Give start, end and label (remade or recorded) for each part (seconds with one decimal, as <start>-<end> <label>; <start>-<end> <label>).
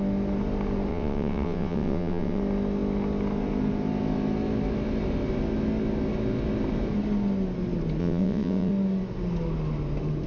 0.0-0.9 recorded; 0.9-2.4 remade; 2.4-8.0 recorded; 8.0-8.7 remade; 8.7-10.3 recorded